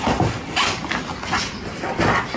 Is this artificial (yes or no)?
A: no